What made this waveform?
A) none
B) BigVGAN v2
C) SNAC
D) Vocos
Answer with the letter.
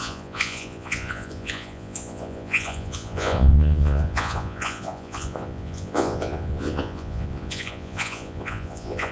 D